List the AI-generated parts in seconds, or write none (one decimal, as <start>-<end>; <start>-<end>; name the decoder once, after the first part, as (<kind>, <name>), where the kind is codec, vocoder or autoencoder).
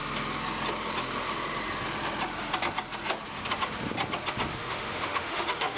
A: 4.5-5.8 (autoencoder, DAC-VAE)